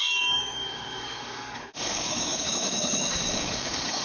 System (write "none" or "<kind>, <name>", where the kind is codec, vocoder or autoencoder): codec, DAC